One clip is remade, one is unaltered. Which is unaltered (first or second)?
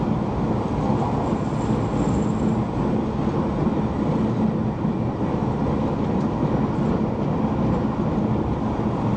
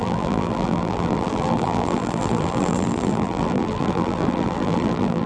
first